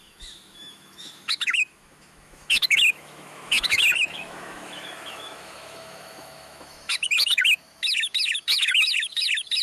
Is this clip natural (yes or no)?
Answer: no